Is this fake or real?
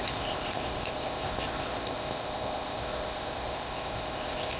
fake